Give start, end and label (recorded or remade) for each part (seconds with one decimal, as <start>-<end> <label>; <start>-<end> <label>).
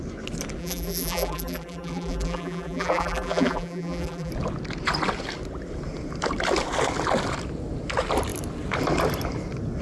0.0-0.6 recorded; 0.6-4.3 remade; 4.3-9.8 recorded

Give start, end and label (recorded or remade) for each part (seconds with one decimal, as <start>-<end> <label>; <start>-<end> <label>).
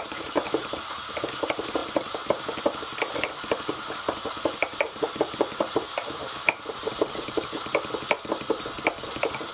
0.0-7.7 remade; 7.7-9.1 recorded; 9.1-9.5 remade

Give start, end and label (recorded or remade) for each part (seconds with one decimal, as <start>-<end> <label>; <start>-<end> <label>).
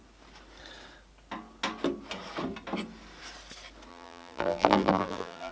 0.0-3.9 recorded; 3.9-5.5 remade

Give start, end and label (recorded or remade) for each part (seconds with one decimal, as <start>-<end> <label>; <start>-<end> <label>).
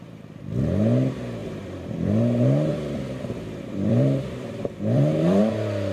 0.0-1.4 recorded; 1.4-2.1 remade; 2.1-2.7 recorded; 2.7-5.4 remade; 5.4-5.9 recorded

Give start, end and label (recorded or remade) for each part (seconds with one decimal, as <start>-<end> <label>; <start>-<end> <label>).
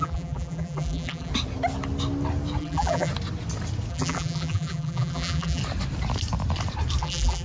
0.0-1.3 remade; 1.3-2.6 recorded; 2.6-3.1 remade; 3.1-3.9 recorded; 3.9-5.6 remade; 5.6-7.0 recorded; 7.0-7.4 remade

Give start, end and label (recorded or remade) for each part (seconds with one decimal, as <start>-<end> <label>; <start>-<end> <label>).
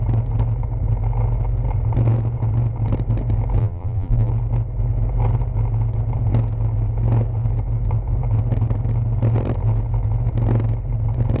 0.0-3.6 recorded; 3.6-4.3 remade; 4.3-11.4 recorded